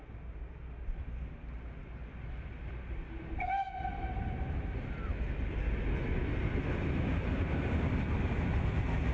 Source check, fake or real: real